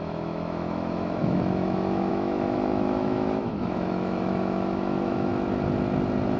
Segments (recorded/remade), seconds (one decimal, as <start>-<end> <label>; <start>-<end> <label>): 0.0-5.3 remade; 5.3-6.4 recorded